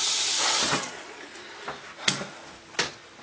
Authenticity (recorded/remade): recorded